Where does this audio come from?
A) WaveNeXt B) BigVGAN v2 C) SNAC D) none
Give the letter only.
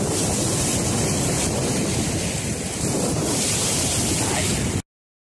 D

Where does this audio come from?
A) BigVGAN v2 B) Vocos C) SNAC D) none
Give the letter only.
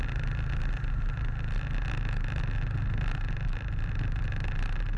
D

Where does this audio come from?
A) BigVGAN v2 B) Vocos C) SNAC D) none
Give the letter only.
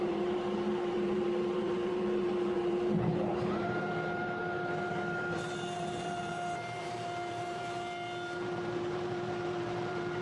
A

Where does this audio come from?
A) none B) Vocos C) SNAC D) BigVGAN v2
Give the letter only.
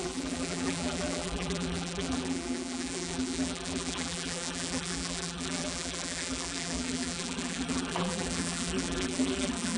D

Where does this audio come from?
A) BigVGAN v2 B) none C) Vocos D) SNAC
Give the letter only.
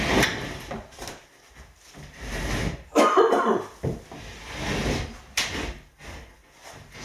B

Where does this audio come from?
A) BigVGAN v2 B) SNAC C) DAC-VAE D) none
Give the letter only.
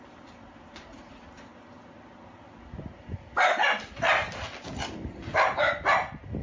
D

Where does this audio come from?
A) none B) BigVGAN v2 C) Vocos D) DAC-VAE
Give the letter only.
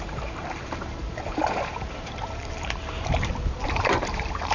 B